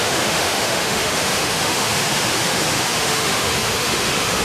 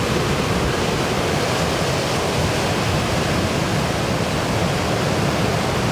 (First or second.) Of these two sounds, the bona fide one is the second